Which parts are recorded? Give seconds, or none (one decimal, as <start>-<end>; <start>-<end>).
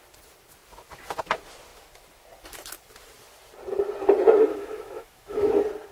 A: 0.0-4.5; 5.5-5.9